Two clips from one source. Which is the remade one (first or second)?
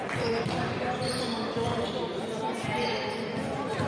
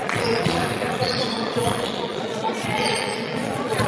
second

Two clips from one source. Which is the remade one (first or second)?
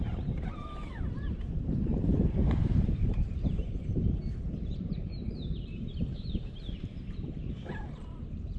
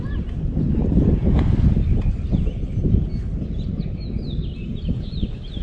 first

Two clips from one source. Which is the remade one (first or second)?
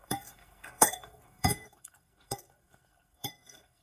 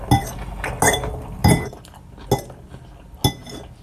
first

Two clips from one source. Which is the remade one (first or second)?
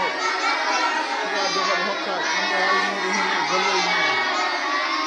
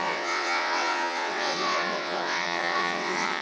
second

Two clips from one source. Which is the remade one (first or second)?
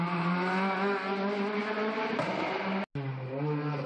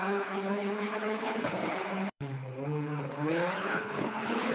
second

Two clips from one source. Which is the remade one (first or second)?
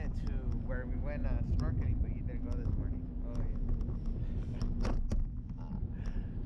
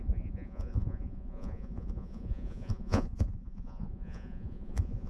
second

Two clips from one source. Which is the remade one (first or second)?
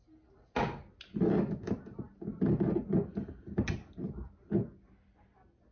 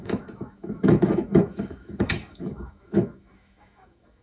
second